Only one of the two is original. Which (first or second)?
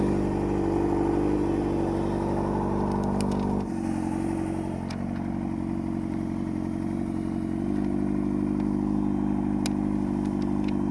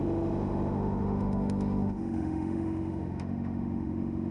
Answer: first